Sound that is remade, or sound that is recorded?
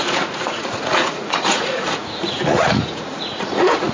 remade